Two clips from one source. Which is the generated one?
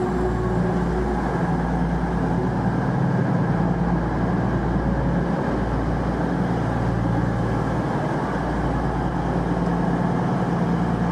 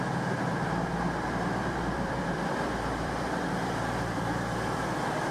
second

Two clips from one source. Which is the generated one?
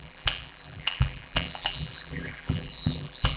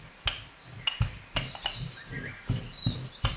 first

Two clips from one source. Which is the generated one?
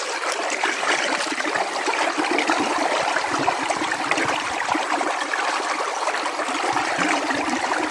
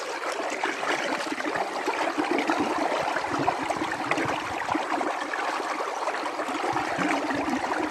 first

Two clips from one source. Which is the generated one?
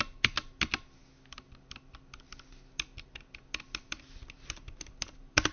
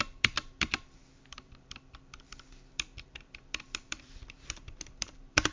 second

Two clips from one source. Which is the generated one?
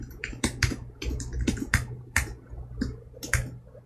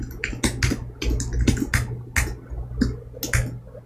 first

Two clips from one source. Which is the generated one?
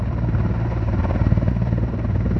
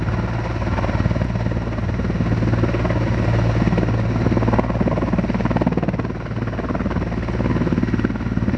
first